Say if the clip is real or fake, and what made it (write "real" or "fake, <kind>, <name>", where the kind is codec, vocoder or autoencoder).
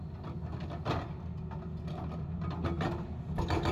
real